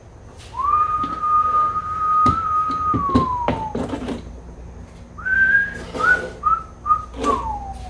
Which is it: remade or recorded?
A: recorded